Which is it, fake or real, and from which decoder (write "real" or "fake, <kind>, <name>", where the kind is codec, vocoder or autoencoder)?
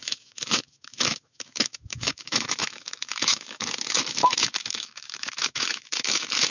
fake, autoencoder, DAC-VAE